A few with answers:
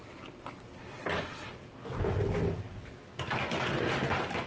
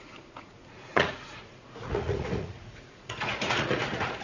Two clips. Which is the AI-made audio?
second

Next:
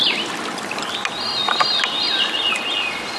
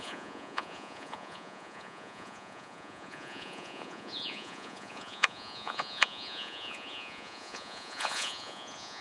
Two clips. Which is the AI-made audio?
second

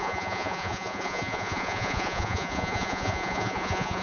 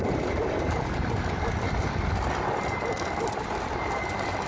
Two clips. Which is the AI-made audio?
first